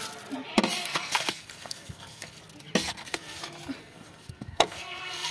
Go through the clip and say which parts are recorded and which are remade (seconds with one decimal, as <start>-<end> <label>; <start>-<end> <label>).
0.0-0.8 recorded; 0.8-2.4 remade; 2.4-2.8 recorded; 2.8-3.4 remade; 3.4-3.8 recorded; 3.8-5.3 remade